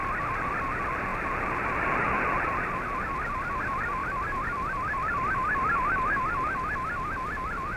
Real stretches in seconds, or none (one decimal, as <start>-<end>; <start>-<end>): 0.0-4.0; 6.3-7.8